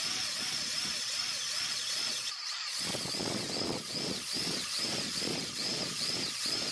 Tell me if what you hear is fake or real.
fake